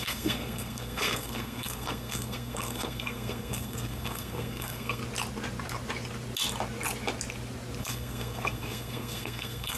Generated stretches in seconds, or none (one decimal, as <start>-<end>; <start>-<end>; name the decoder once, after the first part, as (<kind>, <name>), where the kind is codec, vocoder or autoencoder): 0.0-5.0 (codec, SNAC); 7.8-9.8